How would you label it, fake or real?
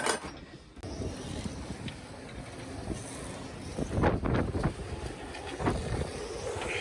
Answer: real